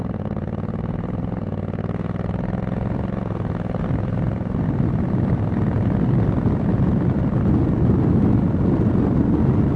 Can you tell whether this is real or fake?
real